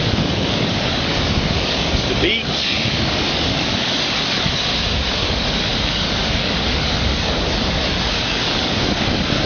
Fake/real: fake